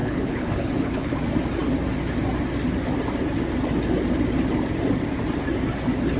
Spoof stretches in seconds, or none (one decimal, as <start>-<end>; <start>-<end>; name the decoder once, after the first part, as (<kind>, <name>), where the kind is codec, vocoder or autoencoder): 0.0-1.2 (codec, HILCodec)

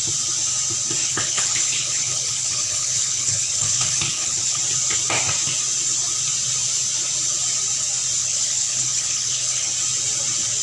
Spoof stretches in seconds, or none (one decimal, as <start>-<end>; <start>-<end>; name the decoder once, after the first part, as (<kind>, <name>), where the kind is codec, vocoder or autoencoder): 1.0-4.6 (codec, HILCodec); 8.2-9.7

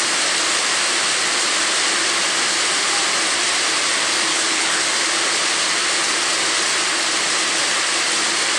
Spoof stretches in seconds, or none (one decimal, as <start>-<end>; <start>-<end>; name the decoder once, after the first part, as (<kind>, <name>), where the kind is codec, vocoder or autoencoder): 4.3-4.8 (codec, HILCodec)

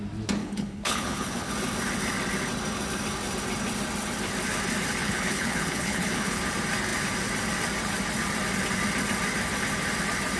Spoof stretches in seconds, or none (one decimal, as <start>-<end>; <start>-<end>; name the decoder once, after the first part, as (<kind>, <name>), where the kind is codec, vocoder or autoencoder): 0.4-1.5 (codec, HILCodec); 5.0-6.4

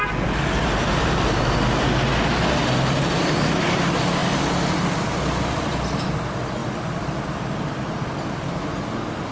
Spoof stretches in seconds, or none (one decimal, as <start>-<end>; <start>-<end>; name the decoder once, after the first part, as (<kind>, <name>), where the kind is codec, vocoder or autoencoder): none

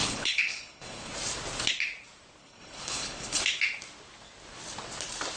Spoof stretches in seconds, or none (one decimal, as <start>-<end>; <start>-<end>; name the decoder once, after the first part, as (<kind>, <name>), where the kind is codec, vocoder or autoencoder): 0.0-1.1 (codec, HILCodec); 2.4-3.4

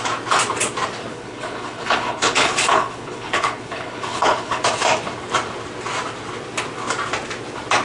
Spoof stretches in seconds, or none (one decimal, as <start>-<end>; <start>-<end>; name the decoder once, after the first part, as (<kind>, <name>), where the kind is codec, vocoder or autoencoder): 1.1-4.6 (codec, HILCodec)